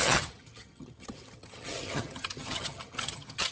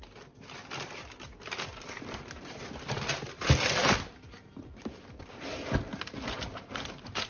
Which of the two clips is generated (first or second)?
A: first